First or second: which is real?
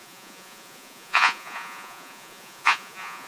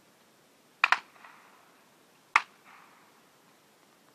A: second